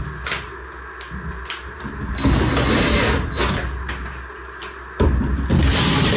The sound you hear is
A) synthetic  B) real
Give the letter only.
B